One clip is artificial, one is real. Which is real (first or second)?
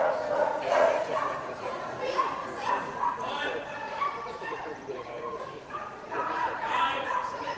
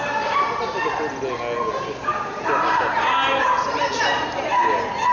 second